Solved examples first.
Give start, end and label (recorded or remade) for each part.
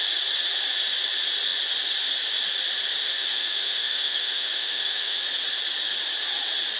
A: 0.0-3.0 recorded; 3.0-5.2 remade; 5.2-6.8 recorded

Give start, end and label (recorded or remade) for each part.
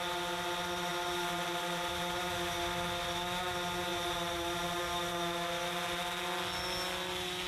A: 0.0-0.9 recorded; 0.9-2.2 remade; 2.2-3.9 recorded; 3.9-4.8 remade; 4.8-7.5 recorded